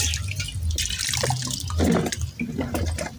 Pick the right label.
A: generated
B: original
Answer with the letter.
B